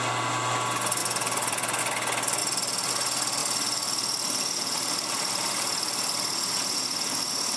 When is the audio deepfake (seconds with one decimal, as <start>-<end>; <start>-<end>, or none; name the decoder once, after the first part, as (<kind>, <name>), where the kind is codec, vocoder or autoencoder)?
1.0-1.8 (vocoder, BigVGAN v2); 3.4-6.3